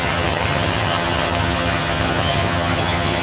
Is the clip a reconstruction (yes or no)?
yes